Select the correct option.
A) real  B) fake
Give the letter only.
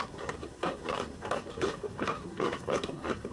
B